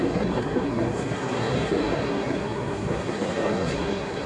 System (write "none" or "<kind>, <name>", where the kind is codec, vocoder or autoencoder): codec, SNAC